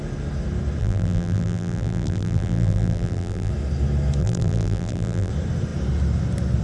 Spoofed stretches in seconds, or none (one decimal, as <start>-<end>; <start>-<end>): 0.8-3.5; 4.2-5.3